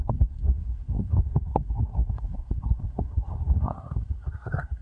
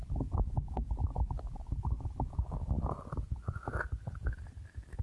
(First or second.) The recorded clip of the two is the second